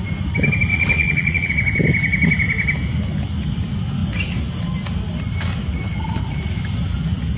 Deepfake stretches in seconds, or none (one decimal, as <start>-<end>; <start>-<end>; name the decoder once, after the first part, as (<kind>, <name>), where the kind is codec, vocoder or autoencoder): 0.7-1.5 (vocoder, Vocos)